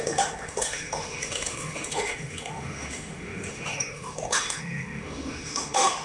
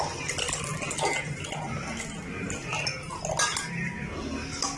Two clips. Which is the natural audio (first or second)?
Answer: second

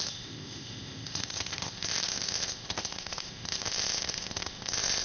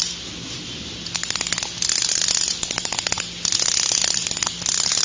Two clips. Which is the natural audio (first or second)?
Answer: second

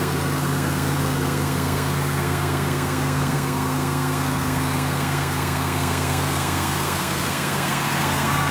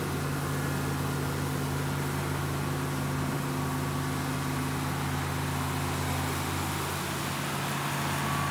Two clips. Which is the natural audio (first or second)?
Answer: second